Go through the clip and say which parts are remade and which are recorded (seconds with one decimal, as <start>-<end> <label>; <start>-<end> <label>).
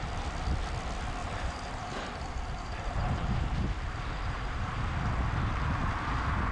0.0-1.2 recorded; 1.2-5.1 remade; 5.1-6.5 recorded